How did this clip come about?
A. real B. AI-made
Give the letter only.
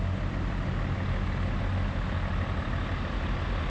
A